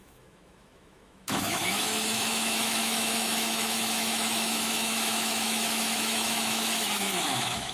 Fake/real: fake